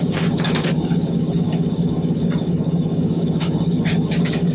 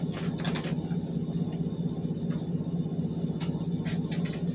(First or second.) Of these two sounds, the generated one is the first